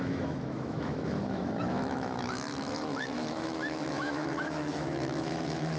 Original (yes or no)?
no